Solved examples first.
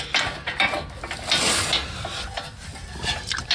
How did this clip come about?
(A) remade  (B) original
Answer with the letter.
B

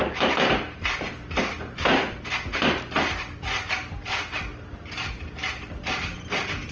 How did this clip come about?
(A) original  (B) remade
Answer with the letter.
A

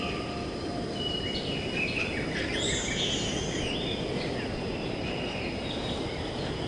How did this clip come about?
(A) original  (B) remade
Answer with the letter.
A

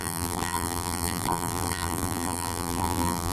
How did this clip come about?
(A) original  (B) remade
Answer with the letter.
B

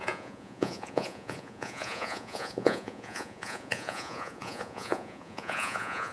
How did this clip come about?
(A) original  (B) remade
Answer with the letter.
B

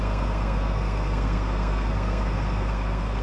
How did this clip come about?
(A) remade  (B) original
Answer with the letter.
A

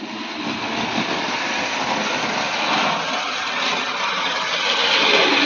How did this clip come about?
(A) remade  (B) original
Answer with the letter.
B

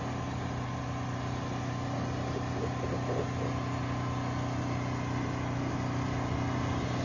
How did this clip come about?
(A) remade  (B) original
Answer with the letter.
B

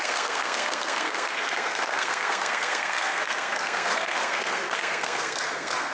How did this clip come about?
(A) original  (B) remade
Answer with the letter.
B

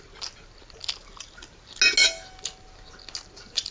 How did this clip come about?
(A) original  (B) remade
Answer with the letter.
A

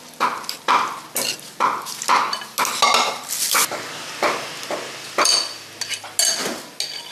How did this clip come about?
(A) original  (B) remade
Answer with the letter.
A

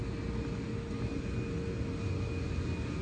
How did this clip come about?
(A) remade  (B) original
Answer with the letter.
B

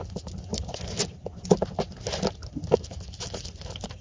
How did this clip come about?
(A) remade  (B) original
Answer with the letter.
B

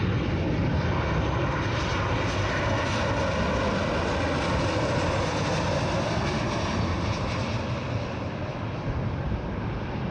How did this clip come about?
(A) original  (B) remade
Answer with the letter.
A